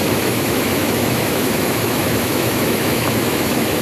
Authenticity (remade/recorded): remade